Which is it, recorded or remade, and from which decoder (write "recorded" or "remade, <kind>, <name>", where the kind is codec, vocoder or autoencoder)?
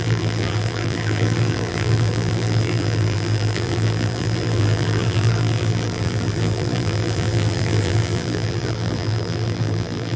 remade, vocoder, BigVGAN v2